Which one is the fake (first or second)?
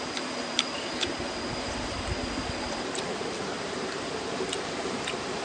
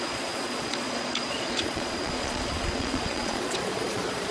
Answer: second